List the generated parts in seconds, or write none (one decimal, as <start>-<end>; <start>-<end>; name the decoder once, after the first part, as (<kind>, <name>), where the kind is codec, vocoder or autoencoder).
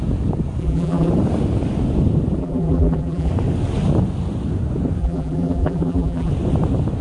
0.6-1.1 (vocoder, BigVGAN v2); 2.4-3.3; 5.0-6.3